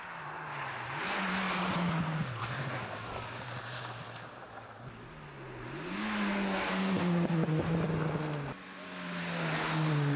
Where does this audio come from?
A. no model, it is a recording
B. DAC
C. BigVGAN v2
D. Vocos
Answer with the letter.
A